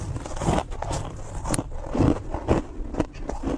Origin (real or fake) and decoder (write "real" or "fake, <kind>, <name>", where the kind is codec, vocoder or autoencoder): real